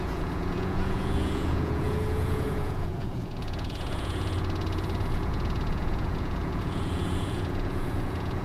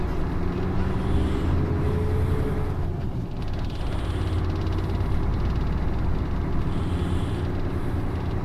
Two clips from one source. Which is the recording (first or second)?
second